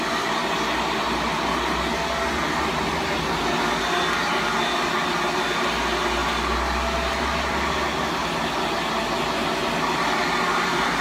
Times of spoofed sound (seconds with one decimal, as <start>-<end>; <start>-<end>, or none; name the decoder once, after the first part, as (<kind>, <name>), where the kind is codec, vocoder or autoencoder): none

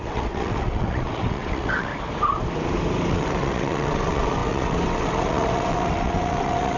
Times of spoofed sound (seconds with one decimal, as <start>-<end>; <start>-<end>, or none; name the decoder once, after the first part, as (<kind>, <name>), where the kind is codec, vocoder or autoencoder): 0.0-1.9 (vocoder, WaveNeXt); 3.1-6.8

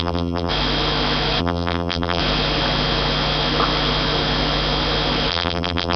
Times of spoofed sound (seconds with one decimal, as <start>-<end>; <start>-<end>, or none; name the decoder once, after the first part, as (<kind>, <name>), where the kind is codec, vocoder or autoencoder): 0.0-0.5 (vocoder, BigVGAN v2); 1.4-2.2; 5.3-6.0

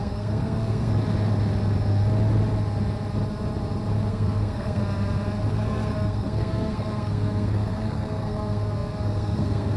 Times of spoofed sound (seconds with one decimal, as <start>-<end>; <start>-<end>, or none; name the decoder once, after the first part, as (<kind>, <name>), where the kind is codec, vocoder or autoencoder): 0.0-0.9 (codec, SNAC); 4.1-4.8; 5.5-9.8

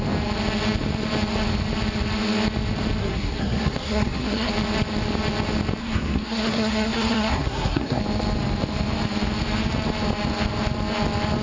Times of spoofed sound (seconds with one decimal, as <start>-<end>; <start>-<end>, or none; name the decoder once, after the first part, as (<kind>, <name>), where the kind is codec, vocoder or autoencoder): 3.0-4.5 (codec, SNAC); 5.8-8.0

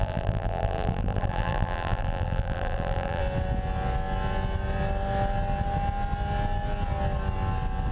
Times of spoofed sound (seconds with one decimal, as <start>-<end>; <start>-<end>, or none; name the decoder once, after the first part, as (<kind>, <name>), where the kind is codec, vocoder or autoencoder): 0.0-3.2 (vocoder, BigVGAN v2)

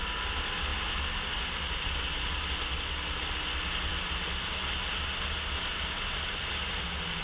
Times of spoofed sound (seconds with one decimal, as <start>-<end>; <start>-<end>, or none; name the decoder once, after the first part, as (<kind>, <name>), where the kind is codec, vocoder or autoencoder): none

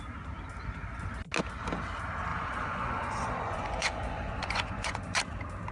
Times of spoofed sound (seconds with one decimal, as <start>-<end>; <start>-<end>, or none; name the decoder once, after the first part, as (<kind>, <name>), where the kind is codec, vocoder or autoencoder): 2.3-5.2 (vocoder, Vocos)